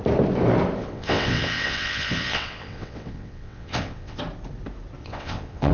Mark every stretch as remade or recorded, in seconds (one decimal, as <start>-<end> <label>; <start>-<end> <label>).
0.0-0.8 recorded; 0.8-4.2 remade; 4.2-5.0 recorded; 5.0-5.7 remade